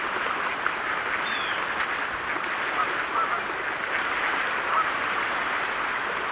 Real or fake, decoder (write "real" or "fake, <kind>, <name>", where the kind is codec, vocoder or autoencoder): real